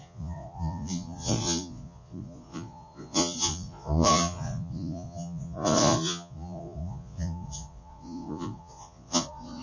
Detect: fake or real fake